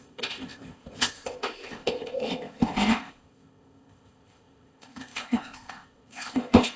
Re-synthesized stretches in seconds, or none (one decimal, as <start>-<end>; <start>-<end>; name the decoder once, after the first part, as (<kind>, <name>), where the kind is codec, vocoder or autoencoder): 0.0-6.8 (codec, ZipCodec)